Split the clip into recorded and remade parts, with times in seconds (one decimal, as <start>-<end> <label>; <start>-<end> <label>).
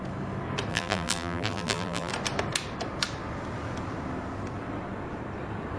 0.0-0.7 recorded; 0.7-2.1 remade; 2.1-5.8 recorded